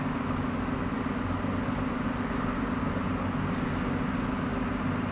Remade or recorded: recorded